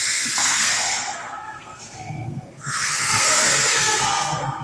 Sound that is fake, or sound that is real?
fake